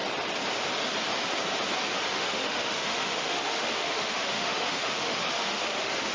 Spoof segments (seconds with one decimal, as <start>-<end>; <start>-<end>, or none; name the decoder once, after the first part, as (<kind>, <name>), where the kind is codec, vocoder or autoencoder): 2.1-6.1 (autoencoder, DAC-VAE)